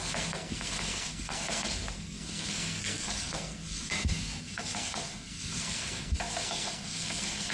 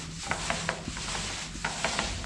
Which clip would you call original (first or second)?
second